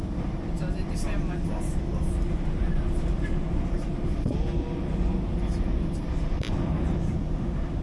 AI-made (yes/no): no